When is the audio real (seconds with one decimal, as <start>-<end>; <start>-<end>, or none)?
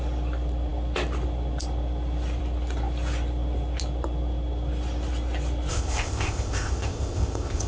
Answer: 0.0-5.7